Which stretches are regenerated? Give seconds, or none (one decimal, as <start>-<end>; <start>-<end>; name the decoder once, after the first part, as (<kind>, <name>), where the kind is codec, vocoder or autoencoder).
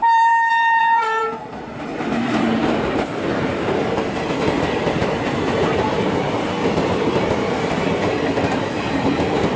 0.0-9.6 (vocoder, BigVGAN v2)